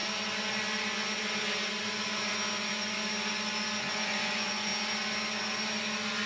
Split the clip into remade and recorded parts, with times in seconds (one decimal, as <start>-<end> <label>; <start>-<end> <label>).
0.0-3.8 recorded; 3.8-4.7 remade; 4.7-6.3 recorded